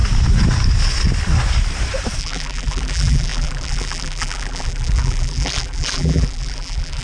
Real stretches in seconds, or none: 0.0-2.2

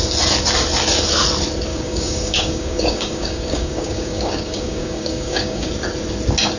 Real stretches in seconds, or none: 0.0-1.7; 5.7-6.6

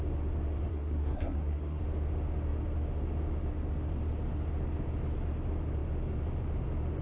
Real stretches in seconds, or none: 0.0-0.7; 1.8-7.0

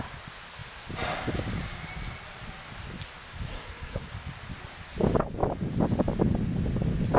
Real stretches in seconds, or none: 0.0-3.5; 4.1-7.2

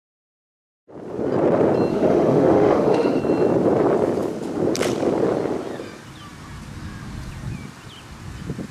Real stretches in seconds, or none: 0.0-1.9; 3.2-8.7

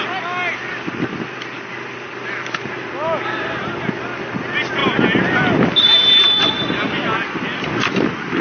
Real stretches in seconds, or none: 0.0-8.4

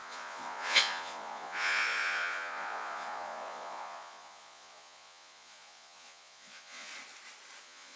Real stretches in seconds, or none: 6.9-7.6